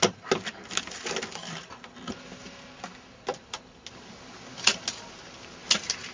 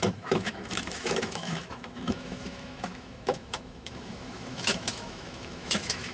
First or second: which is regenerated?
second